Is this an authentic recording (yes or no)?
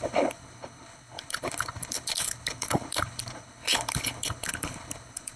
no